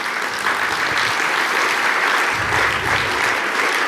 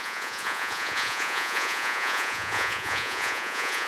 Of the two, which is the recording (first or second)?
first